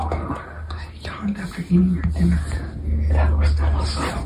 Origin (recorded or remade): recorded